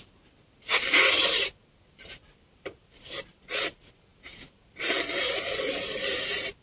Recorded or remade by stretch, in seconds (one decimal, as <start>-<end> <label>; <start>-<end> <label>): 0.0-6.6 recorded

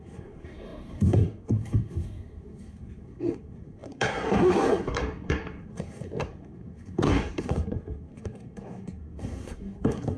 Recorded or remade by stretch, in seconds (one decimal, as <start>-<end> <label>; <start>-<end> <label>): 0.0-10.2 remade

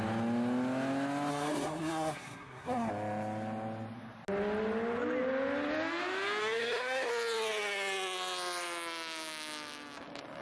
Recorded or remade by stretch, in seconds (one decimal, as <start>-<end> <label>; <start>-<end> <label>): 0.0-1.3 recorded; 1.3-2.9 remade; 2.9-6.4 recorded; 6.4-7.1 remade; 7.1-10.4 recorded

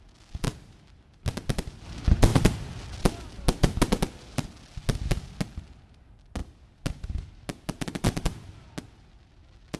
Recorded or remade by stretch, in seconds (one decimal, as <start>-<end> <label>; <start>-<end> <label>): 0.0-9.8 recorded

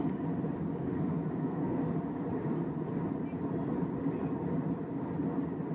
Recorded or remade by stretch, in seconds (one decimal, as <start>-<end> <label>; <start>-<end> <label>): 0.0-0.7 recorded; 0.7-1.8 remade; 1.8-5.7 recorded

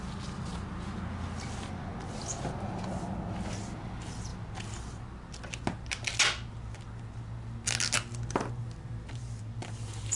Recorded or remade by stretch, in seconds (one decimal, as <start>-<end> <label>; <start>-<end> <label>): 0.0-10.2 recorded

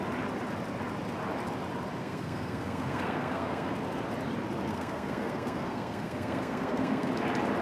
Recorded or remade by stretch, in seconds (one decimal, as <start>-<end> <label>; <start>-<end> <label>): 0.0-2.0 recorded; 2.0-3.7 remade; 3.7-4.7 recorded; 4.7-7.1 remade; 7.1-7.6 recorded

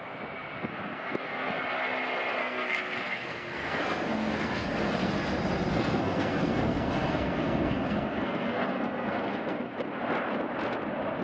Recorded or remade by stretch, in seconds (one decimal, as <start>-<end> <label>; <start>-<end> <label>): 0.0-0.6 recorded; 0.6-1.5 remade; 1.5-2.4 recorded; 2.4-5.1 remade; 5.1-5.7 recorded; 5.7-9.7 remade; 9.7-11.2 recorded